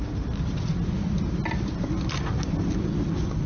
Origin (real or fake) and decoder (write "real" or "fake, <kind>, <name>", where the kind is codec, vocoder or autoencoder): real